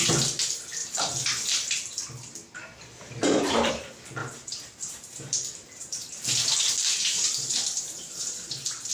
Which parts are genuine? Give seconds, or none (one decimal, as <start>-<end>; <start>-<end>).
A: 0.0-0.8; 3.7-4.2